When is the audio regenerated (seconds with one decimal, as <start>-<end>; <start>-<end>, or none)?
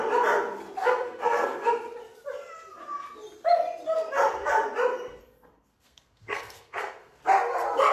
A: 0.8-1.7; 5.2-7.2